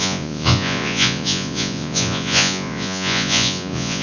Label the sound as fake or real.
fake